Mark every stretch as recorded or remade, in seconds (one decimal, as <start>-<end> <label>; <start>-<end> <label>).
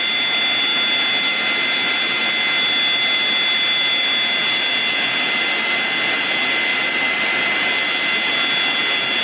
0.0-9.2 recorded